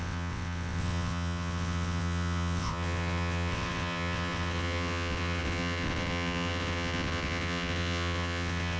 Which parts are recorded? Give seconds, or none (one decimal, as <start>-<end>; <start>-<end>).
none